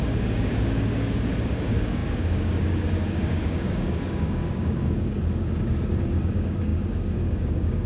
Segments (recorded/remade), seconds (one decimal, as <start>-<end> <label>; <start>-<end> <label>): 0.0-7.9 remade